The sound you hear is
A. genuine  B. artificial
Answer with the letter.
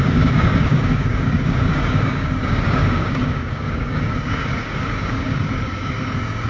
B